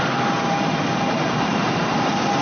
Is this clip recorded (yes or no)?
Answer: no